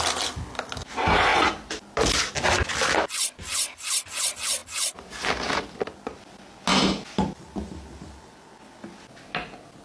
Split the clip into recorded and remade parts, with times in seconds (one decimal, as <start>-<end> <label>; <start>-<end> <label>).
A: 0.0-9.8 recorded